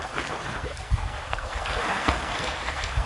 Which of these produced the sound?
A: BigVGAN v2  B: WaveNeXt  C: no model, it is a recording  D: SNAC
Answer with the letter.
D